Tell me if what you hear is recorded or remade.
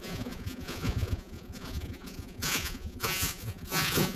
remade